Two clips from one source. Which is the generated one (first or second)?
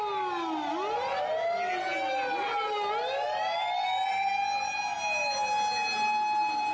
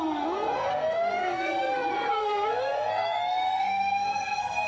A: second